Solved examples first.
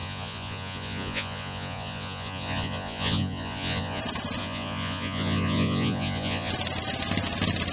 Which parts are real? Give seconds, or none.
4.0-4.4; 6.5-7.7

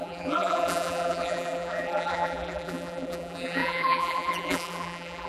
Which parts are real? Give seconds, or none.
none

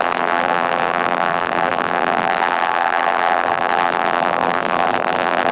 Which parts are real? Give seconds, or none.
none

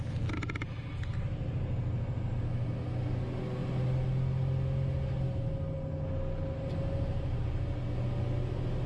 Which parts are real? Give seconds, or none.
0.0-8.9

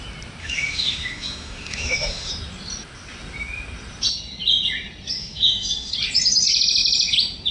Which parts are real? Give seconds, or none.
0.0-0.4; 2.3-5.2; 5.9-7.5